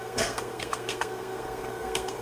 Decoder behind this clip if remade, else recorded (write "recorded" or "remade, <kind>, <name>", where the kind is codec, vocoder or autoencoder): remade, codec, SNAC